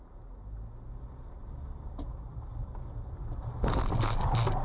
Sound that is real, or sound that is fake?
real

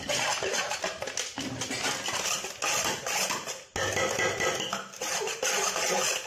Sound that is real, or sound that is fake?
real